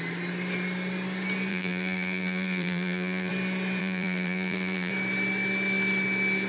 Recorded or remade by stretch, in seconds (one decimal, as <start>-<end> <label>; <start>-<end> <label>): 0.0-1.5 recorded; 1.5-3.3 remade; 3.3-3.8 recorded; 3.8-4.9 remade; 4.9-6.5 recorded